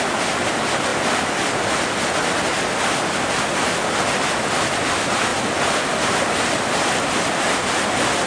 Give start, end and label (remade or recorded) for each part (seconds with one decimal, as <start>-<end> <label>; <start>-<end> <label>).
0.0-8.3 recorded